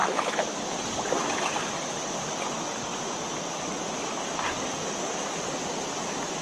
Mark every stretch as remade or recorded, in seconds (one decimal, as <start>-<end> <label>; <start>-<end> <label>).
0.0-0.7 remade; 0.7-6.4 recorded